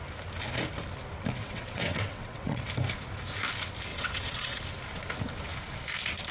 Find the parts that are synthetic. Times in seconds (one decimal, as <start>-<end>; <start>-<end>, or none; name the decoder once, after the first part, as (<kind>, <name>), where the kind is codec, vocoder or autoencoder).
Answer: 1.4-2.7 (vocoder, WaveNeXt); 3.9-4.6